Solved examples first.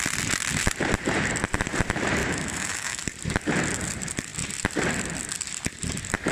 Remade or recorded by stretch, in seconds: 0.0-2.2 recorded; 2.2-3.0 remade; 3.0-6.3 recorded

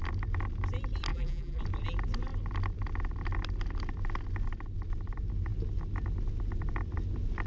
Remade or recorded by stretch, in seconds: 0.0-1.1 recorded; 1.1-1.6 remade; 1.6-7.5 recorded

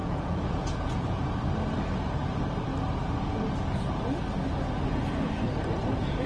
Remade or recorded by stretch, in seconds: 0.0-1.2 remade; 1.2-6.3 recorded